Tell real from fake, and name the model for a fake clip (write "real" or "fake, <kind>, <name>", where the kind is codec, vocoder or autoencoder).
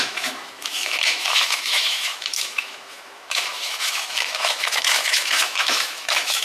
fake, autoencoder, DAC-VAE